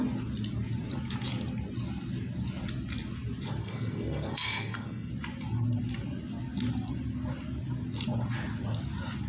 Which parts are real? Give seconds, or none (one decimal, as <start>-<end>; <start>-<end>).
0.0-3.6; 5.1-9.3